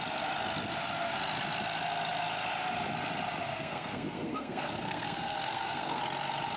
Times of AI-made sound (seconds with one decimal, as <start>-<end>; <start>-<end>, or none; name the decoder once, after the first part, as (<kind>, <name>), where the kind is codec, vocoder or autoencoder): 3.5-6.0 (codec, SNAC)